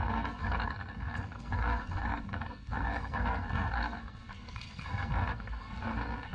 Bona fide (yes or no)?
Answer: no